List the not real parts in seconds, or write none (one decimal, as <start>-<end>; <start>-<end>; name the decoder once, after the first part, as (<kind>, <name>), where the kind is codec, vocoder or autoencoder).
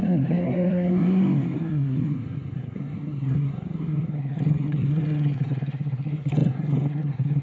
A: 0.0-7.4 (codec, SNAC)